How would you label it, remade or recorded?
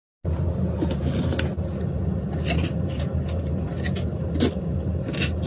recorded